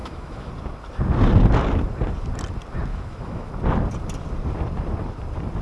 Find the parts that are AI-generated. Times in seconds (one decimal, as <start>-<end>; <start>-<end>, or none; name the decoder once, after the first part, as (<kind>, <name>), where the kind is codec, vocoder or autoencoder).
0.0-0.5 (autoencoder, DAC-VAE); 2.9-3.5